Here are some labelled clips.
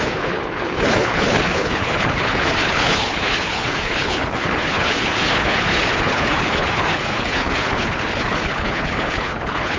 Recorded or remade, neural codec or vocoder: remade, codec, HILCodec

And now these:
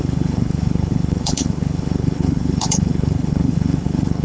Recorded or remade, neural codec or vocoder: remade, codec, HILCodec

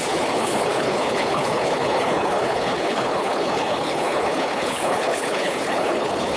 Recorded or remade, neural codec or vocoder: remade, codec, HILCodec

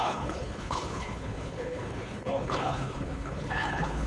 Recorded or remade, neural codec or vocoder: remade, codec, HILCodec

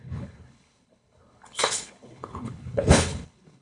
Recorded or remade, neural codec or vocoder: remade, codec, HILCodec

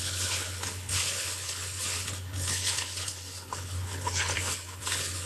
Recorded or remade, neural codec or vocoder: remade, codec, HILCodec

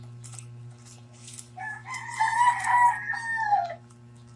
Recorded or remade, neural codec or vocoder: recorded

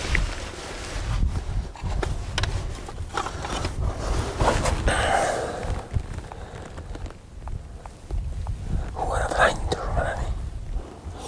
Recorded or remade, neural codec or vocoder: recorded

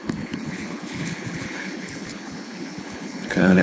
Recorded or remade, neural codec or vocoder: remade, codec, HILCodec